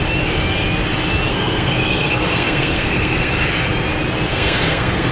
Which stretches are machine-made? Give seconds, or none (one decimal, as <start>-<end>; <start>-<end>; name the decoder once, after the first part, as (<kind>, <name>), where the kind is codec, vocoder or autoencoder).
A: 1.3-3.3 (codec, SNAC); 4.3-5.1